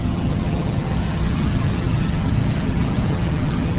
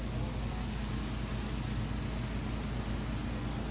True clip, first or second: second